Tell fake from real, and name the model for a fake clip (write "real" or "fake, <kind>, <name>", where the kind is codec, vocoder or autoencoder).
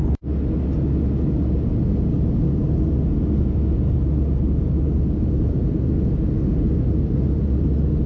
real